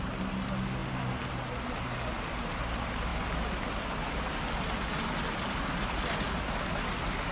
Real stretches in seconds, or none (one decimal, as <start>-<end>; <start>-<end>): 0.0-7.3